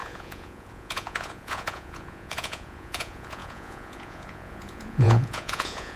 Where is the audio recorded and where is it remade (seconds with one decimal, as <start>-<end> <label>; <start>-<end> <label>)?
0.0-6.0 remade